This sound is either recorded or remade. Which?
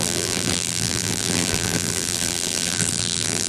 remade